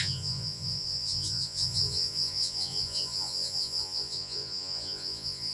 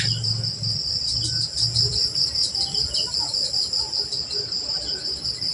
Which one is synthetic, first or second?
first